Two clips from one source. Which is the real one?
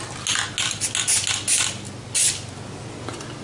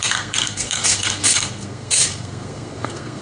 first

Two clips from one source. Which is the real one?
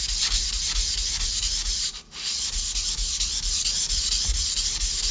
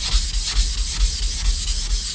second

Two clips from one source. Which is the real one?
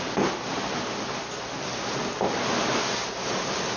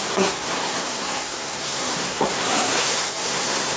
first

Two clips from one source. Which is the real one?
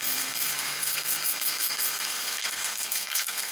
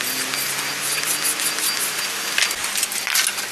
second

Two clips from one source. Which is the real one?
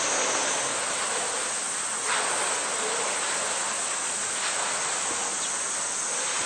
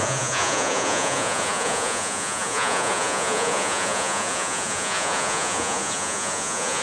first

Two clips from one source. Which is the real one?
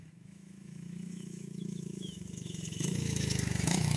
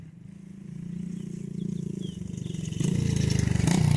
second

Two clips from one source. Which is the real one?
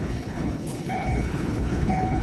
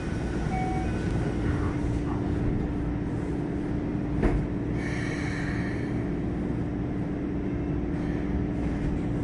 second